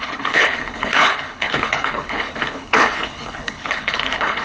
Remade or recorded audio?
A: remade